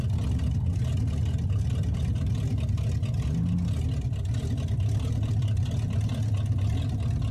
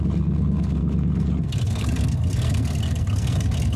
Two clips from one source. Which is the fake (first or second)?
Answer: second